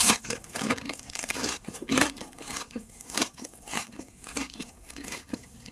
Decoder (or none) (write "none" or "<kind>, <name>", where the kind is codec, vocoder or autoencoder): codec, SNAC